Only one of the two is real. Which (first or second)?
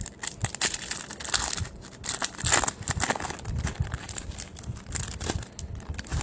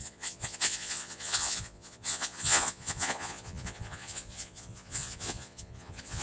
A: first